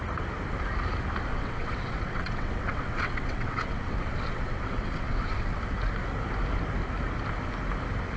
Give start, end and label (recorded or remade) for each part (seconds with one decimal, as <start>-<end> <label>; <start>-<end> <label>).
0.0-1.3 recorded; 1.3-5.6 remade; 5.6-8.2 recorded